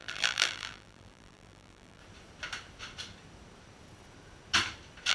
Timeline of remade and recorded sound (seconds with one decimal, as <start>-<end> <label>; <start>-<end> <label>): 0.0-2.0 remade; 2.0-5.1 recorded